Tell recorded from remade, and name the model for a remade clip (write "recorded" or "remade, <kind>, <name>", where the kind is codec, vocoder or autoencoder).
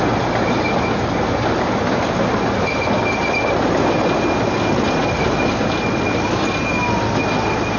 recorded